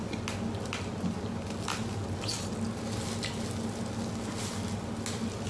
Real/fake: real